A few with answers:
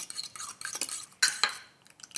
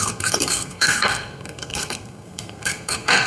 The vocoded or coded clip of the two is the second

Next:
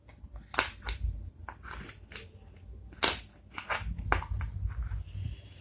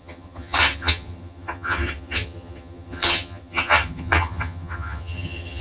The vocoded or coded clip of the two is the second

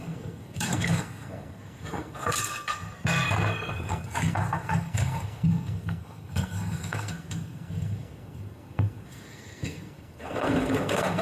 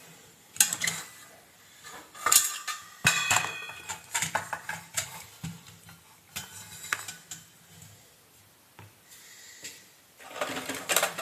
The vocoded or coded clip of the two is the first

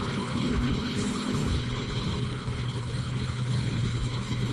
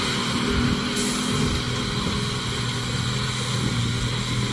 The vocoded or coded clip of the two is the first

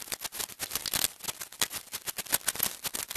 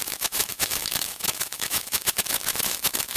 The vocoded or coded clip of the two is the second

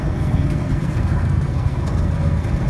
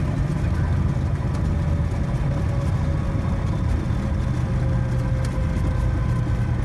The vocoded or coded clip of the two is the first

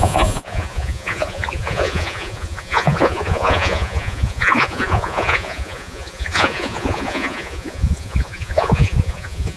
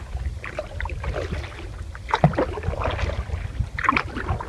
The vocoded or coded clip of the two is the first